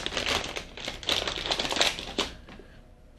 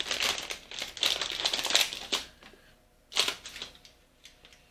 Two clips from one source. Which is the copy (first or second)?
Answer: first